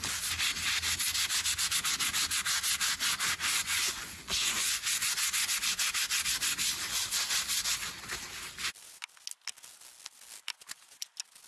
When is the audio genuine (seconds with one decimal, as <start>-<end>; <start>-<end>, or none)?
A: 0.0-3.6; 5.5-11.5